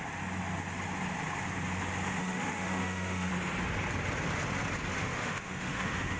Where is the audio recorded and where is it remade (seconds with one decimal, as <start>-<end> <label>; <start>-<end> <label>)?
0.0-2.2 recorded; 2.2-3.3 remade; 3.3-5.0 recorded; 5.0-6.2 remade